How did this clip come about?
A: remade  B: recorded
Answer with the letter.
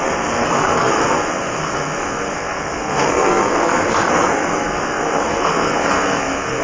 A